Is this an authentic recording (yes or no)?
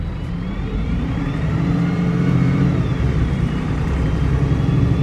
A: no